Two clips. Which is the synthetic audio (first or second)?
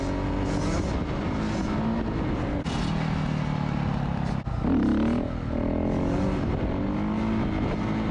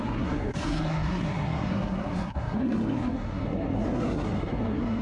second